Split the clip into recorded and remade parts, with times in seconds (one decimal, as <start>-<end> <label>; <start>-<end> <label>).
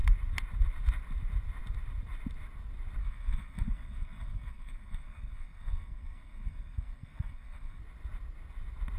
0.0-3.0 recorded; 3.0-7.8 remade; 7.8-9.0 recorded